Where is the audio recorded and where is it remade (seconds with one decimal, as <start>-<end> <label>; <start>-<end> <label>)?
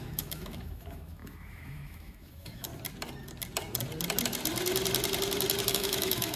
0.0-2.7 remade; 2.7-5.7 recorded; 5.7-6.4 remade